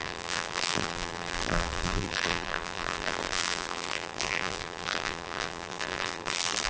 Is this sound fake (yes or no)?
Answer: yes